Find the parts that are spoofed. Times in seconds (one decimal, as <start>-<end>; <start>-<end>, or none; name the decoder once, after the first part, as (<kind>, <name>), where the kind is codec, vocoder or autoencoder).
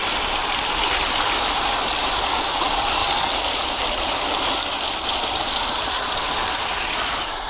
0.0-7.5 (vocoder, BigVGAN v2)